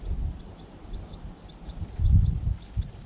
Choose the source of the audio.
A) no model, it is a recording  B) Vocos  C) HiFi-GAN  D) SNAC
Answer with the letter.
A